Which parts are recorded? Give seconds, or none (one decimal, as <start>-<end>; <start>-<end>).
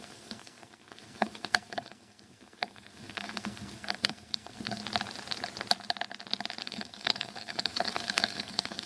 4.8-6.6